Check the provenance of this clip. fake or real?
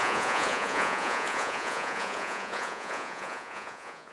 fake